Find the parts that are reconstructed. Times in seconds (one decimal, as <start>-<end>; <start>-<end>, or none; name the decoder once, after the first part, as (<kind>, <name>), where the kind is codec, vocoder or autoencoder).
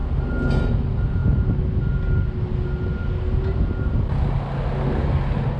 none